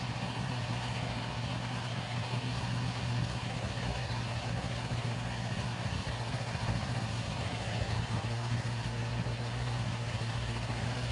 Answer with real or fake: fake